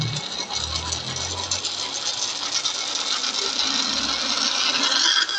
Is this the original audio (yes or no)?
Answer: yes